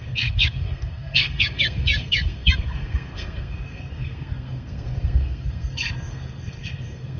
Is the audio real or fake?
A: fake